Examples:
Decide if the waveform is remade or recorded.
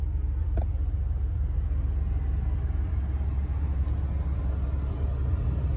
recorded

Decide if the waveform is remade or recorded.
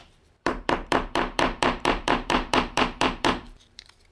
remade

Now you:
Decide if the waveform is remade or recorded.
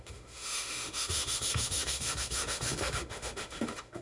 remade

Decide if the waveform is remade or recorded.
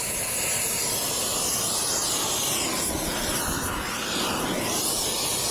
recorded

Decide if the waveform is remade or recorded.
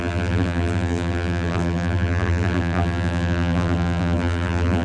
remade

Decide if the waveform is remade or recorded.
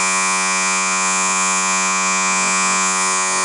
remade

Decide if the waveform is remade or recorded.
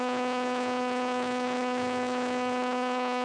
remade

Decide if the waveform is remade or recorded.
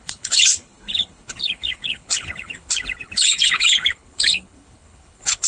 remade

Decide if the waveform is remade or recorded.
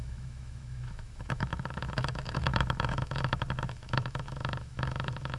remade